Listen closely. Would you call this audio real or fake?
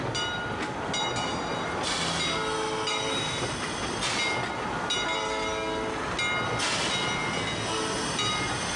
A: real